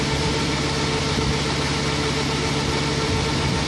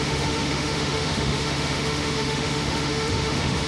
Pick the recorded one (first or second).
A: first